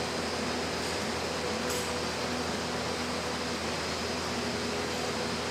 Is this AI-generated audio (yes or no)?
no